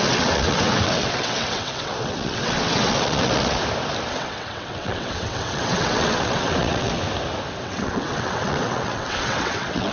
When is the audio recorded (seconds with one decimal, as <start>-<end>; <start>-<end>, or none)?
3.6-4.1; 7.0-7.6